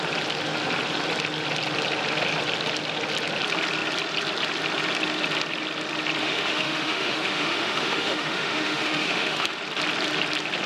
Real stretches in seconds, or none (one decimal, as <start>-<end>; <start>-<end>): 0.0-6.2; 9.6-10.7